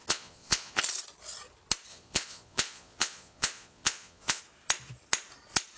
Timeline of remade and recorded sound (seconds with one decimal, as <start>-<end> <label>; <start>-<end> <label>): 0.0-0.8 remade; 0.8-1.9 recorded; 1.9-4.4 remade; 4.4-5.8 recorded